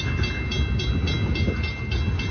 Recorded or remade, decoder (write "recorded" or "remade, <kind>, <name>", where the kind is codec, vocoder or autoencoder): recorded